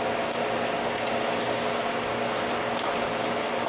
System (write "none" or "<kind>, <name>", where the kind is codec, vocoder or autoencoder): none